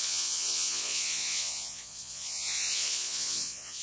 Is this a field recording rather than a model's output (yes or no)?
no